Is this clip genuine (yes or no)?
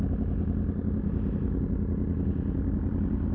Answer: yes